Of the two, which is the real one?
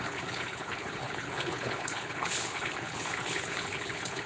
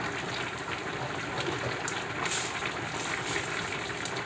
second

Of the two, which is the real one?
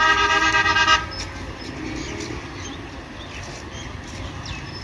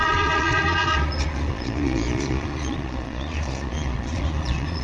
first